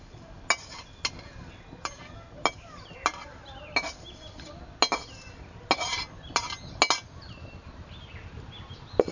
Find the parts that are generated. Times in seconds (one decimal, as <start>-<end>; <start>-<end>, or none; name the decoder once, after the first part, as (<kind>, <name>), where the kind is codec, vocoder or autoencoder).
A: none